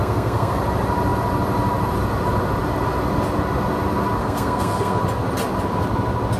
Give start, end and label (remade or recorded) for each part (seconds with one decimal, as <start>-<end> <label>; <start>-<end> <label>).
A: 0.0-0.6 remade; 0.6-4.2 recorded; 4.2-5.0 remade; 5.0-6.4 recorded